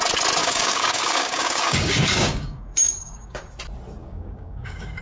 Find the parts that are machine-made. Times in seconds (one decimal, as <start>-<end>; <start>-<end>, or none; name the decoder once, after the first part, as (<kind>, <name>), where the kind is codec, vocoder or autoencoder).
0.4-3.4 (codec, DAC); 4.0-5.0